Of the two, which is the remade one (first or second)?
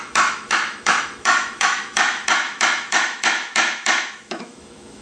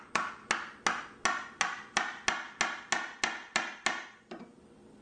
first